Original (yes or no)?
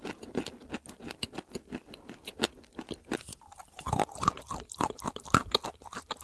yes